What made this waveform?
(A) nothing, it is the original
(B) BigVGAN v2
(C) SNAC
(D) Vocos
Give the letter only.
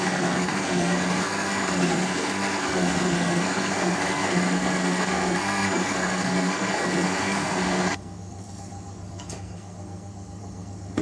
C